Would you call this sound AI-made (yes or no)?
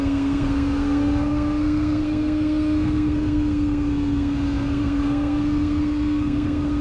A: yes